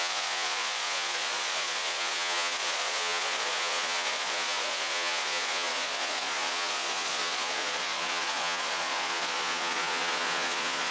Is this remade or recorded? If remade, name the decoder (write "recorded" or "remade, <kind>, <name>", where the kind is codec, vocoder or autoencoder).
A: remade, vocoder, Vocos